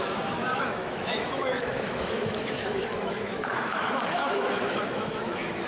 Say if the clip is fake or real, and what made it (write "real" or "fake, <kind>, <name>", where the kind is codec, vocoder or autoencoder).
fake, autoencoder, DAC-VAE